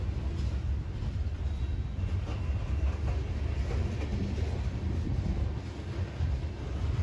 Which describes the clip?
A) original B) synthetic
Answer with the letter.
A